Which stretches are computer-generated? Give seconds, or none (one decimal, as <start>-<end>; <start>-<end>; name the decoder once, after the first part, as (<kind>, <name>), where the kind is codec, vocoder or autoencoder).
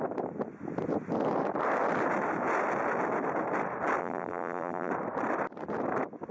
4.0-4.9 (vocoder, BigVGAN v2)